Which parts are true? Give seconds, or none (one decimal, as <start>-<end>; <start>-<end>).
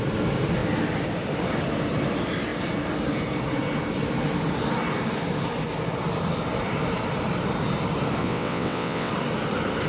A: 0.0-8.2; 9.1-9.9